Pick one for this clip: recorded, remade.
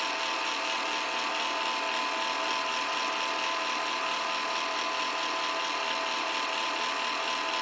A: recorded